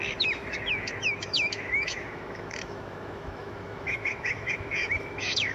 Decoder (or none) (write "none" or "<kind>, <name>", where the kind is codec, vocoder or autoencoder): autoencoder, DAC-VAE